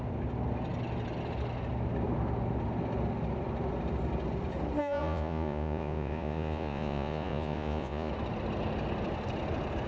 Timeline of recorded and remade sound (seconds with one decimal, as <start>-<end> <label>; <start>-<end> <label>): 0.0-4.8 recorded; 4.8-8.1 remade; 8.1-9.9 recorded